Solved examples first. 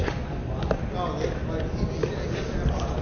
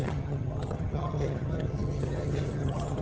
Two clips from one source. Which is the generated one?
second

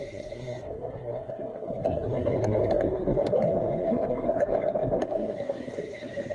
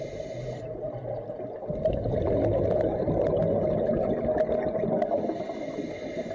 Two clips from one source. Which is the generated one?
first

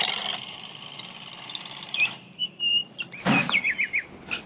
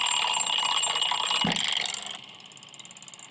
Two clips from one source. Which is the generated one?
first